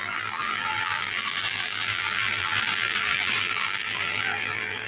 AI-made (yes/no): yes